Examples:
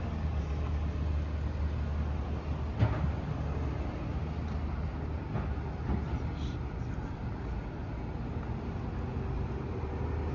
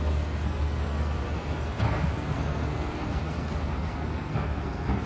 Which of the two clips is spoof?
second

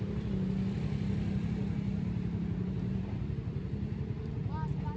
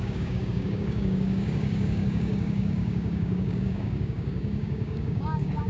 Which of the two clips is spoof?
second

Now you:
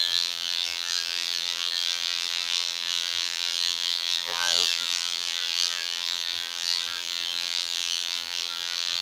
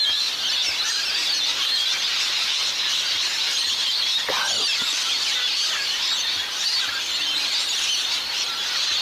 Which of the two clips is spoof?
first